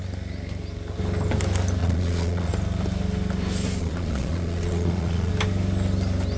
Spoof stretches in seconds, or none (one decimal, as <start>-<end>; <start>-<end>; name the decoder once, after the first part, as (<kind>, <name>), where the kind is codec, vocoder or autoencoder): 1.8-2.5 (vocoder, Vocos); 3.8-5.3